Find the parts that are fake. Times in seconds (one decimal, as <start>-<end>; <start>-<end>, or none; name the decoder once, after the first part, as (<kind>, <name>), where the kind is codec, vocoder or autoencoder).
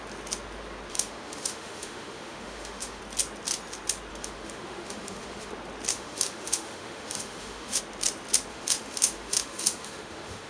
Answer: 0.9-3.0 (autoencoder, DAC-VAE); 4.1-5.5; 5.9-7.8; 8.5-10.5